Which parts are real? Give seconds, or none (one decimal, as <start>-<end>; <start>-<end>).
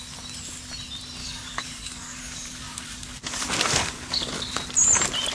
0.0-1.2; 4.4-5.3